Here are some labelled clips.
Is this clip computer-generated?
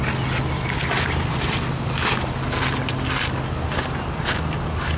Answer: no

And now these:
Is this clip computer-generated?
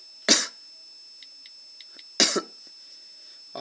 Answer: no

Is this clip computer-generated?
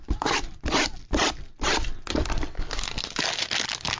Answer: no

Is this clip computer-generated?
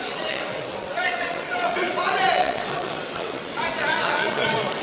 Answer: yes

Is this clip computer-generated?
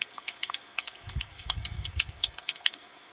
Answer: yes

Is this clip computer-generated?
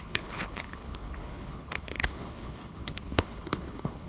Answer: yes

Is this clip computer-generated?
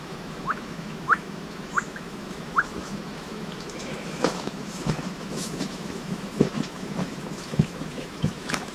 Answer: yes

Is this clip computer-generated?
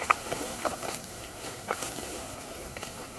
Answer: yes